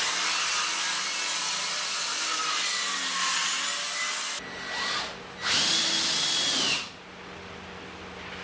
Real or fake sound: real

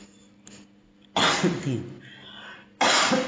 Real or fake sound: real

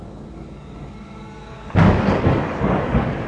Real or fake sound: fake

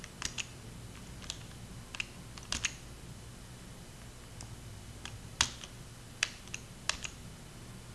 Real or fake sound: real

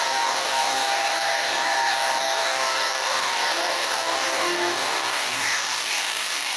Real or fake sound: fake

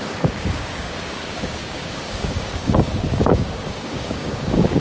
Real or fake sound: fake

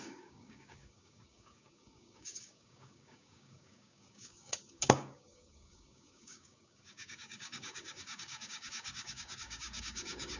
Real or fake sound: fake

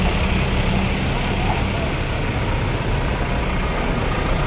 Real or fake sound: real